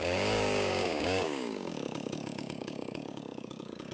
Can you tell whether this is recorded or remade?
remade